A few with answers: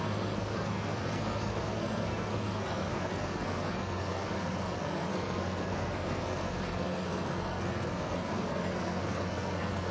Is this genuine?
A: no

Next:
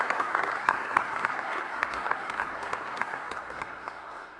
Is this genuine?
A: no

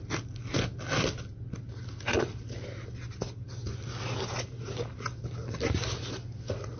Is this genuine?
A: yes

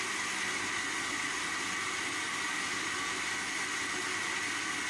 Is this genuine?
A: yes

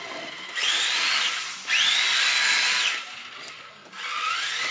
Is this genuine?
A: yes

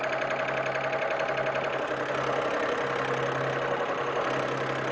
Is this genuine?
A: yes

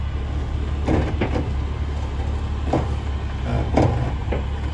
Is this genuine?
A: yes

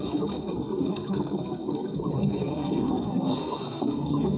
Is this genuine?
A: no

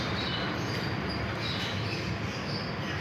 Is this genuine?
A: yes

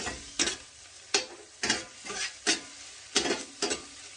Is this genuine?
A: yes